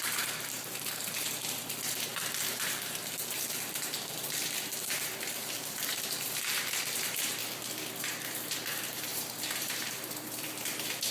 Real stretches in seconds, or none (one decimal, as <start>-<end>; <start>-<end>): 7.4-8.0